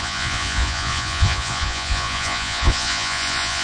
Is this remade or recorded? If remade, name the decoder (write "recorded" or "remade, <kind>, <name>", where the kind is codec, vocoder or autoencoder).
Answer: remade, vocoder, Vocos